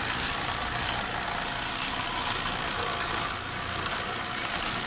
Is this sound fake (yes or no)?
no